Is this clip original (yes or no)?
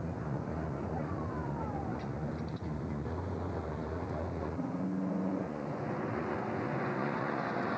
no